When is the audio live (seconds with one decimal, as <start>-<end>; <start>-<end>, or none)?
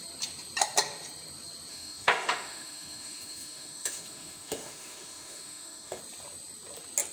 0.0-1.7; 6.0-7.1